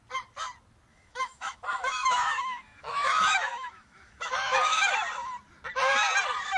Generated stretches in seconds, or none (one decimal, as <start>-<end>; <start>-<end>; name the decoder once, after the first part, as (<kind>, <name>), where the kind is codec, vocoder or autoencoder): 0.9-4.9 (autoencoder, DAC-VAE)